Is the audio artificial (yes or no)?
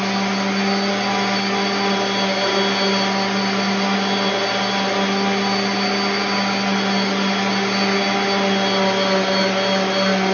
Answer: no